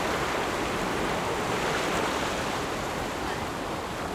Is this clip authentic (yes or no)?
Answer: yes